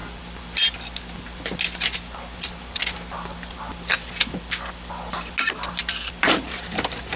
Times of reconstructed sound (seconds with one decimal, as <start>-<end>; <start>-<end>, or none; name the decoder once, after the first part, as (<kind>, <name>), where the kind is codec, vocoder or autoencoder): 2.4-2.8 (vocoder, BigVGAN v2); 6.2-7.2